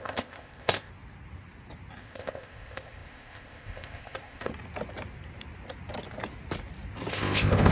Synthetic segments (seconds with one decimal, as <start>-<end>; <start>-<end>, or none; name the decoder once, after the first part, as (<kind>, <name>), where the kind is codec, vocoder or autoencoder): 0.0-0.9 (codec, ZipCodec); 2.0-4.5; 7.1-7.7